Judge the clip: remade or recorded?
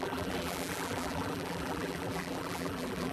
remade